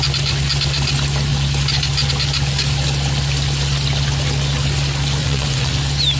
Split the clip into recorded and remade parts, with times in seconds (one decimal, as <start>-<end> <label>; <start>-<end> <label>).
0.0-5.2 recorded; 5.2-5.7 remade; 5.7-6.2 recorded

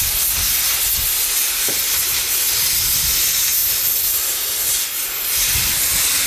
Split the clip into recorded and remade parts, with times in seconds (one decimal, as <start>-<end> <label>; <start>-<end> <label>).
0.0-6.3 recorded

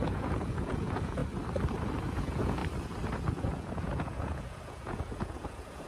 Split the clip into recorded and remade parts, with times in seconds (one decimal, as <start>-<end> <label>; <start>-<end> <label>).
0.0-1.2 remade; 1.2-2.1 recorded; 2.1-2.6 remade; 2.6-3.3 recorded; 3.3-5.9 remade

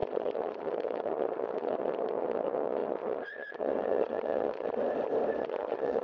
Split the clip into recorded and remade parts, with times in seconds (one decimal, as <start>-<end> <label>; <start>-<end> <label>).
0.0-4.8 remade; 4.8-5.4 recorded; 5.4-6.0 remade

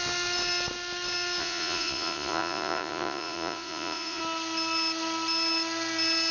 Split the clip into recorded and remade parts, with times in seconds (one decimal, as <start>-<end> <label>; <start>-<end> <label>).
0.0-1.4 recorded; 1.4-4.2 remade; 4.2-6.3 recorded

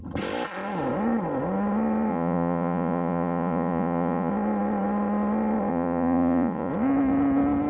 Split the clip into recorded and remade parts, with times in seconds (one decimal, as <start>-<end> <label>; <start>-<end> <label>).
0.0-2.1 recorded; 2.1-4.3 remade; 4.3-5.7 recorded; 5.7-6.7 remade; 6.7-7.7 recorded